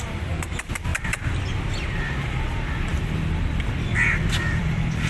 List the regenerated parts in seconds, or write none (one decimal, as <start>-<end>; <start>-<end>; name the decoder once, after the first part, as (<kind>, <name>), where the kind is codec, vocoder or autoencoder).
2.9-5.1 (vocoder, BigVGAN v2)